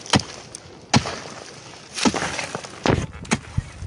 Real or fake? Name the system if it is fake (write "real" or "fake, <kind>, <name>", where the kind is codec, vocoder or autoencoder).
real